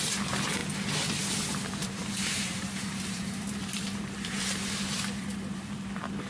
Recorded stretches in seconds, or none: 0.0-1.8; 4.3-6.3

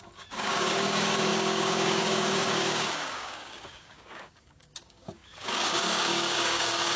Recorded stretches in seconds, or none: none

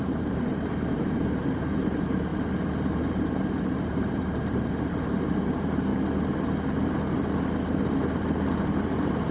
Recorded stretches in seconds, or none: 2.3-3.1; 5.9-8.6

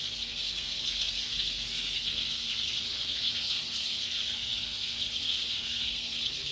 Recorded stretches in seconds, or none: none

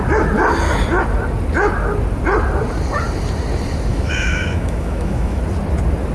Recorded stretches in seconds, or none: 0.0-3.9; 5.4-6.1